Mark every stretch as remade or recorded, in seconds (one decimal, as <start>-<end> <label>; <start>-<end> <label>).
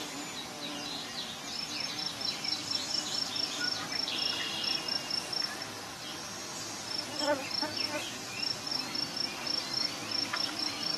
0.0-11.0 recorded